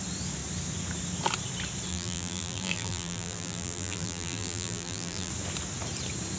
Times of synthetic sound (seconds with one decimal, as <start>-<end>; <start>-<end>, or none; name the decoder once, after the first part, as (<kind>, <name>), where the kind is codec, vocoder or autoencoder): 1.9-5.3 (vocoder, BigVGAN v2)